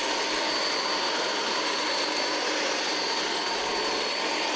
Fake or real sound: real